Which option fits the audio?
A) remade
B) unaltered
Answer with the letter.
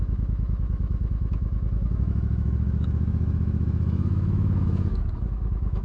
A